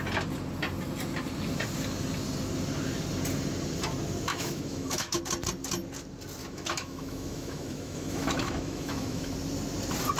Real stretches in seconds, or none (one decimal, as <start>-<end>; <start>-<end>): 0.0-4.3; 5.2-6.4; 9.3-10.2